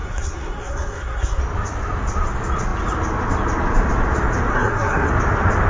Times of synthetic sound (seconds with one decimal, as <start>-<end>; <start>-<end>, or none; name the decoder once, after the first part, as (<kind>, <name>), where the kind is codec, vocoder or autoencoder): 0.0-1.4 (codec, SNAC); 4.5-5.1